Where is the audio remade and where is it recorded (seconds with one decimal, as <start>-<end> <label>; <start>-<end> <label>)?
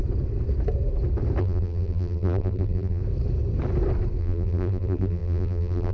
0.0-1.4 recorded; 1.4-3.0 remade; 3.0-4.2 recorded; 4.2-5.9 remade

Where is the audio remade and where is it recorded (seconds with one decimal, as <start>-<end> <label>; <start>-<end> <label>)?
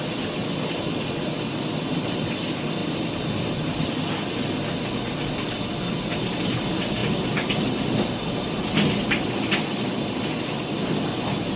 0.0-7.0 recorded; 7.0-8.7 remade; 8.7-11.6 recorded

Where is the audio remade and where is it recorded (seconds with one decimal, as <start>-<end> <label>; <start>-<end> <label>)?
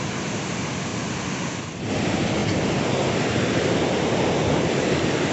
0.0-0.9 recorded; 0.9-1.8 remade; 1.8-2.4 recorded; 2.4-4.1 remade; 4.1-5.3 recorded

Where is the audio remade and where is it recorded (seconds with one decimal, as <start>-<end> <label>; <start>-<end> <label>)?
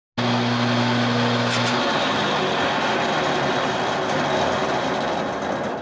0.0-4.6 recorded; 4.6-5.2 remade; 5.2-5.8 recorded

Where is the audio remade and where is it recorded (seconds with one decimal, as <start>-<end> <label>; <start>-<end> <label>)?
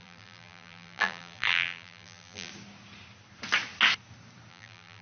0.0-2.5 remade; 2.5-4.5 recorded; 4.5-5.0 remade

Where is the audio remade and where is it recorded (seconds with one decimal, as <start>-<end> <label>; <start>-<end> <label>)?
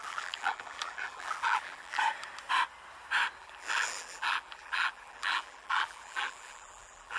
0.0-2.0 remade; 2.0-3.4 recorded; 3.4-7.2 remade